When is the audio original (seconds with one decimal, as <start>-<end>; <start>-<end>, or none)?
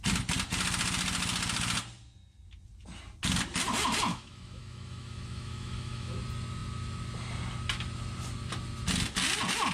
0.0-4.1; 6.1-9.7